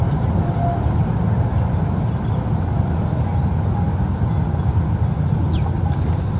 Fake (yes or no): no